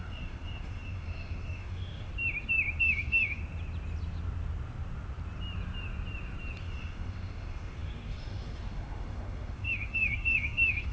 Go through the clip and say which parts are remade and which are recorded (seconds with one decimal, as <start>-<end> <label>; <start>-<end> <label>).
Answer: 0.0-2.1 remade; 2.1-2.8 recorded; 2.8-3.4 remade; 3.4-6.6 recorded; 6.6-10.9 remade